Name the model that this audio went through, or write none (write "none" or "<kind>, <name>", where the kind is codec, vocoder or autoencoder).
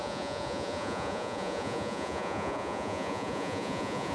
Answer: vocoder, Vocos